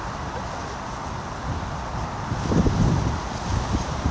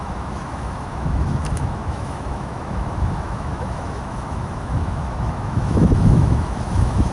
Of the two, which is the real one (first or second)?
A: first